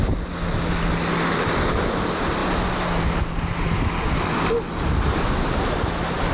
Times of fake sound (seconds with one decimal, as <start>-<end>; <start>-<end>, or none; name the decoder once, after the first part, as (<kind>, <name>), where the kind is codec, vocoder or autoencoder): none